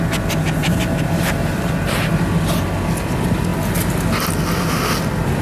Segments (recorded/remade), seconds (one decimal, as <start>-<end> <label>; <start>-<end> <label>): 0.0-0.6 recorded; 0.6-2.1 remade; 2.1-5.4 recorded